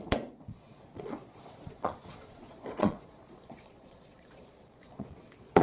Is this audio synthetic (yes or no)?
yes